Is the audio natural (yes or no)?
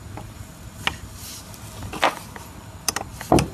yes